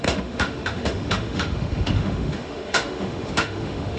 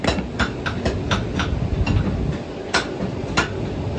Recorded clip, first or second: second